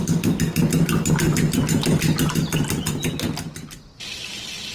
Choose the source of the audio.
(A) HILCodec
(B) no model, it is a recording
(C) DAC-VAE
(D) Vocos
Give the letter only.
B